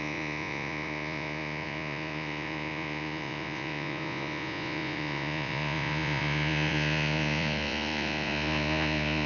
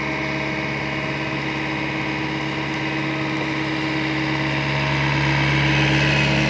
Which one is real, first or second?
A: second